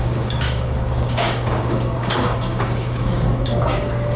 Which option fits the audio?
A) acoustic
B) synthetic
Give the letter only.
B